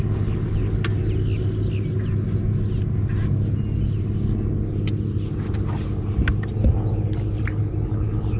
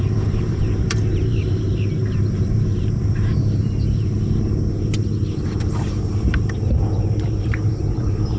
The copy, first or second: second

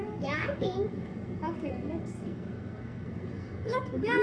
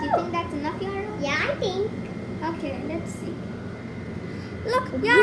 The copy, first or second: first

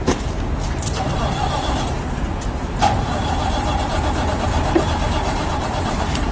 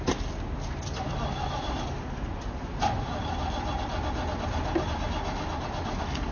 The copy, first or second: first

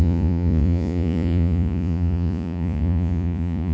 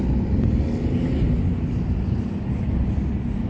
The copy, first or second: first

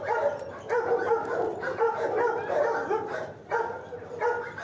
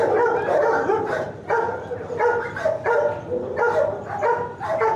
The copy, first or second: second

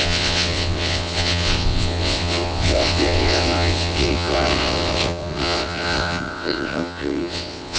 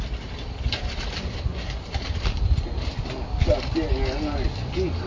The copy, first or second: first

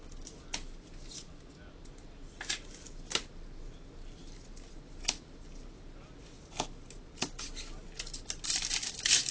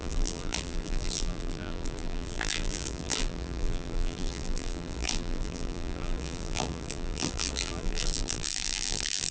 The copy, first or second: second